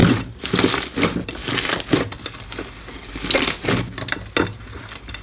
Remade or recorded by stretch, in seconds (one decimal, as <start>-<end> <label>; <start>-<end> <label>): 0.0-5.2 recorded